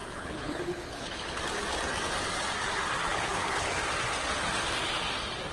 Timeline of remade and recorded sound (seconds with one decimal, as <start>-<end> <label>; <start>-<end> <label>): 0.0-1.4 remade; 1.4-3.1 recorded; 3.1-3.8 remade; 3.8-5.5 recorded